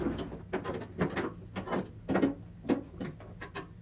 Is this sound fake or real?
real